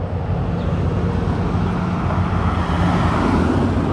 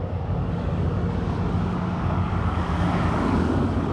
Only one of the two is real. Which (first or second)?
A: first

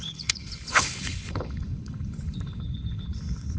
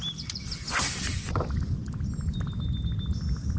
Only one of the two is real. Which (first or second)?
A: second